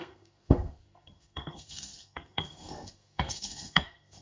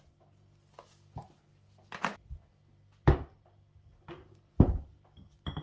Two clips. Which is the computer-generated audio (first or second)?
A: first